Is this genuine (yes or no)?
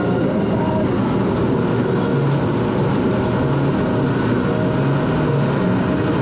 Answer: yes